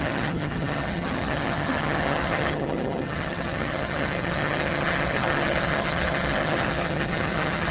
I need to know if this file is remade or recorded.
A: remade